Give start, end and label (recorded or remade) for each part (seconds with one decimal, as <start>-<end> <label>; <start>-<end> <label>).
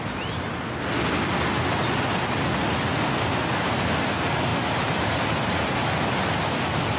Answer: 0.0-7.0 recorded